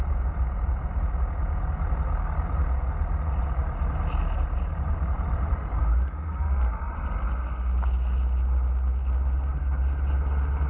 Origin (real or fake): real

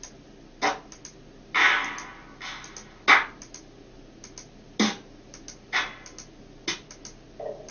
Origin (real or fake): real